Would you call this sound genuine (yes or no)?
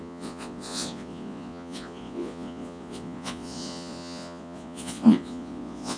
no